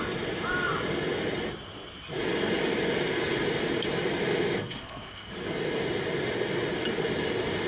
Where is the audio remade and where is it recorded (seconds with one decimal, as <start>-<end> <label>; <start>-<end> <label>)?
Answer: 0.0-4.6 recorded; 4.6-5.3 remade; 5.3-7.7 recorded